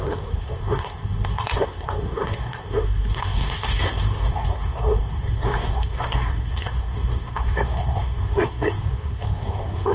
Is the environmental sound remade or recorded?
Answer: remade